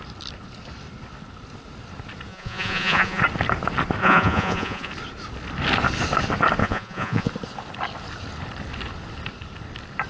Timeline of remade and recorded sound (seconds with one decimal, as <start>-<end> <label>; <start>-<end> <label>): 0.0-2.3 recorded; 2.3-3.2 remade; 3.2-4.0 recorded; 4.0-4.9 remade; 4.9-6.6 recorded; 6.6-7.3 remade; 7.3-10.1 recorded